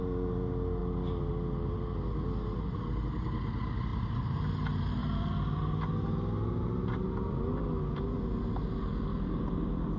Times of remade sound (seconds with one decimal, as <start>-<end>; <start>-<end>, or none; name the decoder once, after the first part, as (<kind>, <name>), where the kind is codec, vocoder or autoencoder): 3.9-4.4 (vocoder, BigVGAN v2)